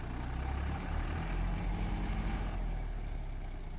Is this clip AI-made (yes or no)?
no